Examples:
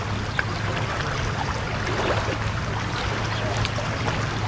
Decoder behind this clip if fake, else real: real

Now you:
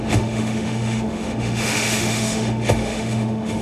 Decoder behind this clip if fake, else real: fake, autoencoder, DAC-VAE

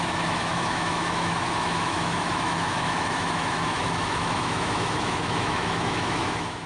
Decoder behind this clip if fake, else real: fake, autoencoder, DAC-VAE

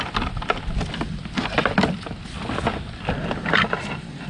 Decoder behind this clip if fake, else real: real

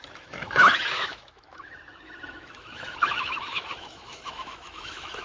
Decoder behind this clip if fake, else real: fake, autoencoder, DAC-VAE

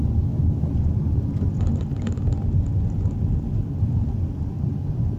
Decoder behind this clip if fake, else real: real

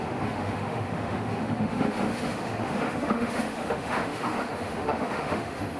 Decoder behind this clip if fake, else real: fake, autoencoder, DAC-VAE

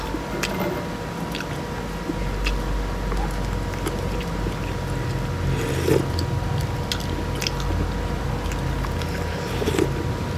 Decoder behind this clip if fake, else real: real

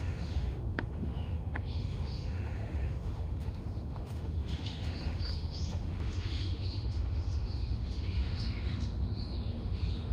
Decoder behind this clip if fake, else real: fake, autoencoder, DAC-VAE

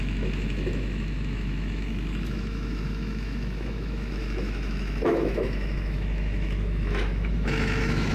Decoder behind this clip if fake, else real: fake, autoencoder, DAC-VAE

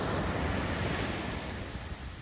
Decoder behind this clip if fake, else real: real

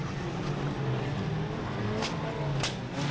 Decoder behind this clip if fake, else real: real